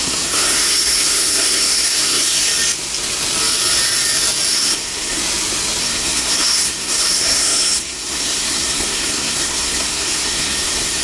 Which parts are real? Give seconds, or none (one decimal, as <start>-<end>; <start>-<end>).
2.5-4.5; 5.2-5.8